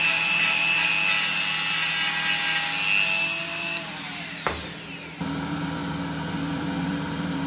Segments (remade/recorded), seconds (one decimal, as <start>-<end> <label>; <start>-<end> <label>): 0.0-0.9 remade; 0.9-3.4 recorded; 3.4-5.8 remade; 5.8-6.3 recorded; 6.3-7.5 remade